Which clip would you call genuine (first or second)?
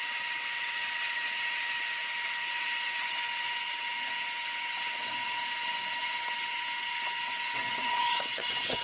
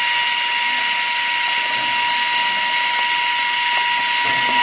second